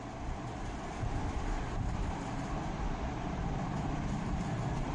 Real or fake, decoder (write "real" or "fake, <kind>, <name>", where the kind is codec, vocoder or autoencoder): fake, vocoder, BigVGAN v2